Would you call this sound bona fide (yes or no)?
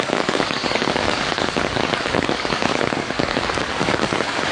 no